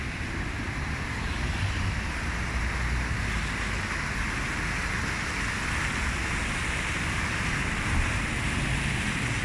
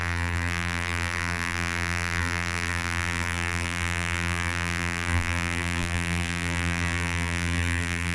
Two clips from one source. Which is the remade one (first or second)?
second